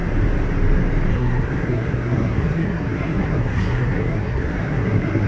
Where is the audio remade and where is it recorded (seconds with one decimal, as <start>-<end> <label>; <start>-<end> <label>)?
0.0-1.1 recorded; 1.1-5.3 remade